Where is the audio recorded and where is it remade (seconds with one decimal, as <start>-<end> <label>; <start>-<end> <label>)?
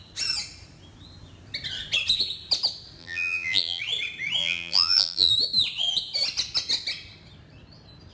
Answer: 0.0-3.0 recorded; 3.0-3.8 remade; 3.8-4.4 recorded; 4.4-5.3 remade; 5.3-8.1 recorded